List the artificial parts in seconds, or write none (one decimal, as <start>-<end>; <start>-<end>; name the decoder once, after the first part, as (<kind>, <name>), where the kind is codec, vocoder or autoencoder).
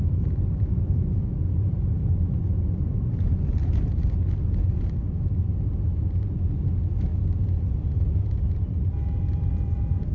0.0-2.5 (vocoder, BigVGAN v2); 4.9-7.1; 8.4-10.1